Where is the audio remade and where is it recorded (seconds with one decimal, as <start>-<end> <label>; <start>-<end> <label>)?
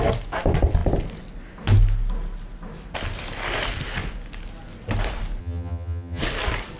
0.0-5.4 recorded; 5.4-6.2 remade; 6.2-6.8 recorded